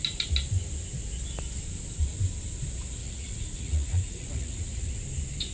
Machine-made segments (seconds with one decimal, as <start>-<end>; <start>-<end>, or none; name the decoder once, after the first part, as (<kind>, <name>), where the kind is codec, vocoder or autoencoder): 3.0-5.0 (vocoder, Vocos)